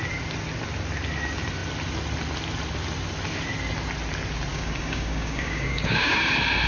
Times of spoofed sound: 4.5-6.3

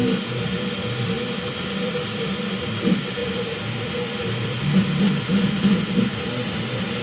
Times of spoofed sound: none

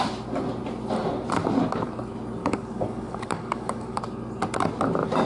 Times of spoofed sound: 2.4-4.0

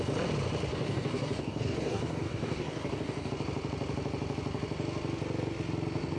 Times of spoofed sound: 0.7-3.3

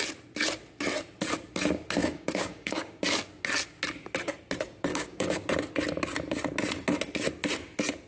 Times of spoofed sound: 2.0-3.0; 4.9-5.5